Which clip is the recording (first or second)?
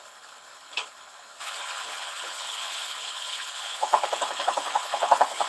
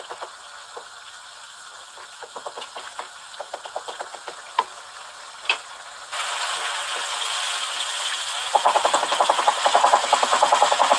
second